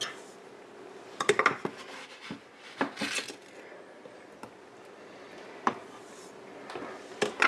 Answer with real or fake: real